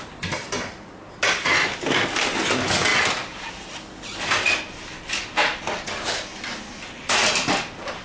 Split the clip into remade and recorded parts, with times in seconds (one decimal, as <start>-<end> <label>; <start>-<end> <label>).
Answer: 0.0-8.0 recorded